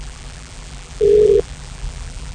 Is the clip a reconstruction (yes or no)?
yes